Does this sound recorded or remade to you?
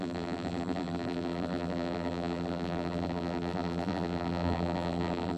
remade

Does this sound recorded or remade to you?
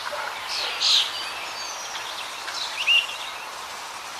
recorded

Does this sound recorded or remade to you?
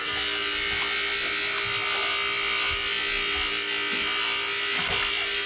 recorded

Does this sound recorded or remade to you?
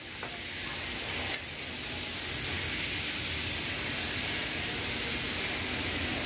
recorded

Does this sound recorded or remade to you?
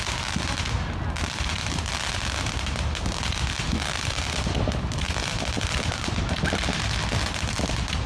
recorded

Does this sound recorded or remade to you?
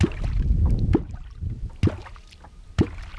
recorded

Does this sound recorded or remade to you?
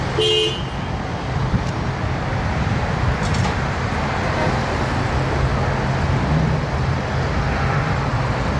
recorded